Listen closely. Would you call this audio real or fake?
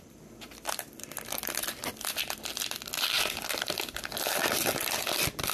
fake